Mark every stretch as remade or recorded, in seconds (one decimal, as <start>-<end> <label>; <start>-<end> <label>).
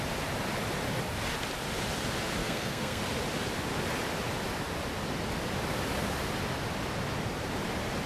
0.0-2.4 recorded; 2.4-3.0 remade; 3.0-8.1 recorded